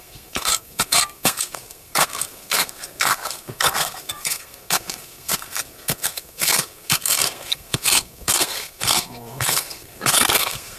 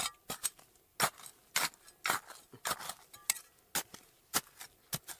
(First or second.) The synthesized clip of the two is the first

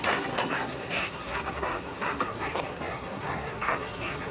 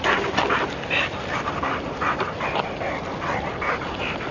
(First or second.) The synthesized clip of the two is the first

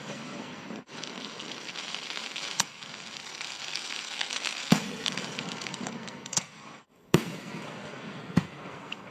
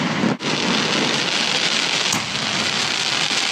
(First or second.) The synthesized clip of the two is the first